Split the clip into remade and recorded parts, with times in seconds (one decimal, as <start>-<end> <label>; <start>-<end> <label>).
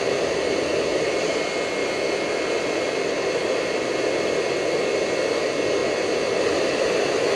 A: 0.0-1.8 recorded; 1.8-4.5 remade; 4.5-7.4 recorded